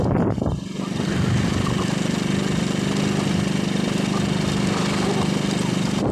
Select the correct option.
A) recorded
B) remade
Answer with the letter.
A